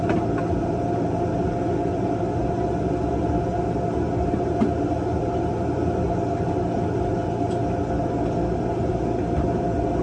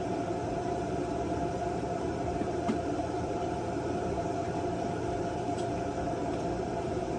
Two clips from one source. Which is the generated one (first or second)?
second